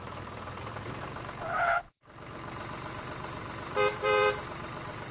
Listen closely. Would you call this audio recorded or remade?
remade